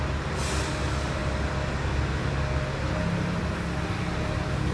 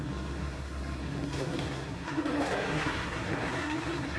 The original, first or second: first